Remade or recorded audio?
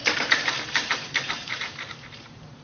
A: remade